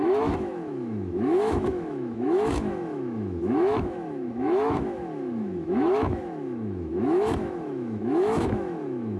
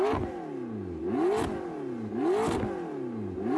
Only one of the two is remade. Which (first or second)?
first